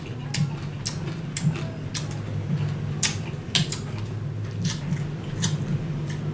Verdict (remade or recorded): recorded